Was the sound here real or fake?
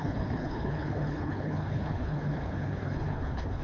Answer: fake